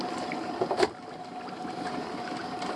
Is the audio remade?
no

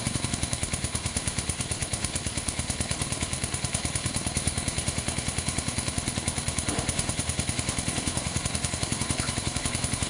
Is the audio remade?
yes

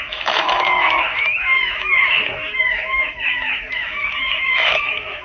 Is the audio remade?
yes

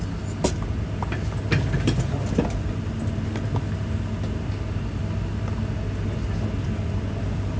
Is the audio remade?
no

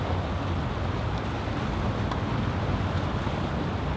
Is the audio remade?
no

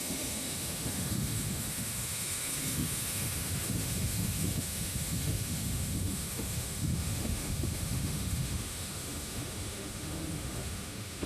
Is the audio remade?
yes